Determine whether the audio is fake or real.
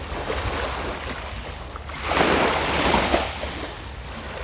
real